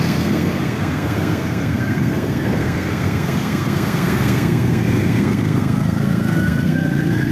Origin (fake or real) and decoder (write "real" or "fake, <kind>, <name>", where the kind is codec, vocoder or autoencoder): fake, codec, SNAC